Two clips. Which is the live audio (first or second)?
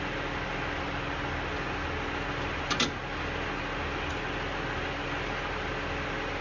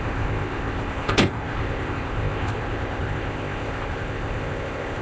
first